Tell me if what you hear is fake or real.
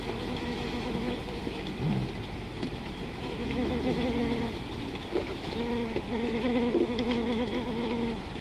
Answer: fake